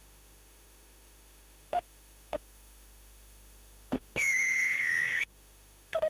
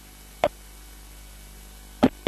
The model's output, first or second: first